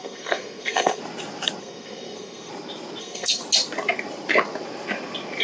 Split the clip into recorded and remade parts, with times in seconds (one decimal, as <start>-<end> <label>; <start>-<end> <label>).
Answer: 0.0-1.0 remade; 1.0-1.6 recorded; 1.6-2.5 remade; 2.5-3.0 recorded; 3.0-3.4 remade; 3.4-5.4 recorded